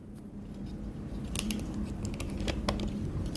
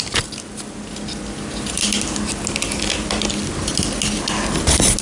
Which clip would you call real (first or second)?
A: second